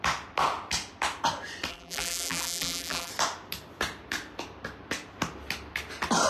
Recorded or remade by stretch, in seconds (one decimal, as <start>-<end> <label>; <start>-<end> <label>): 0.0-1.7 recorded; 1.7-3.1 remade; 3.1-6.3 recorded